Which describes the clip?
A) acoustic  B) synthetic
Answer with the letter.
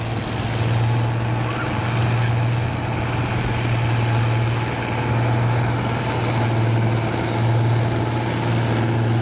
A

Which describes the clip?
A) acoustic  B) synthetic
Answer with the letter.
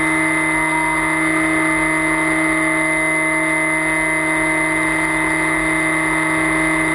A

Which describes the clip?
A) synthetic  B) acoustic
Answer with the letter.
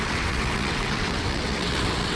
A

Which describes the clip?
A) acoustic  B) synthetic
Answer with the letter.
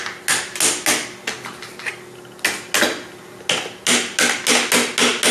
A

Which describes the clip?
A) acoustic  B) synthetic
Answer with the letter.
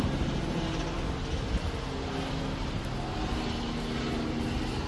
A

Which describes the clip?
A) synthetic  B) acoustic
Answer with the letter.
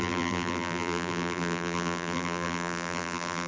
A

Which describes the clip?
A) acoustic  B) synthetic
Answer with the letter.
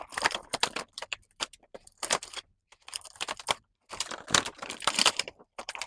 B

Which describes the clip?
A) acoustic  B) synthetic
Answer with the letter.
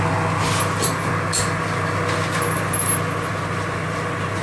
A